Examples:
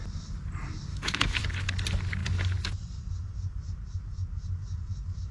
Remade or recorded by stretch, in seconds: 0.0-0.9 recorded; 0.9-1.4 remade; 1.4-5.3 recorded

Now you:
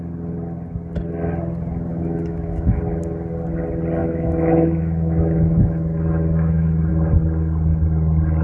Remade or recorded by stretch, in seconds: 0.0-1.9 recorded; 1.9-2.8 remade; 2.8-4.0 recorded; 4.0-6.9 remade; 6.9-8.4 recorded

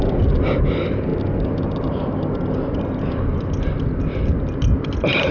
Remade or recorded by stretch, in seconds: 0.0-5.3 recorded